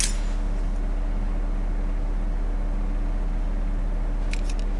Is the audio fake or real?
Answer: real